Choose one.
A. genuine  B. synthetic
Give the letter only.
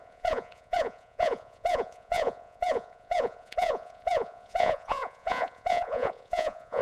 B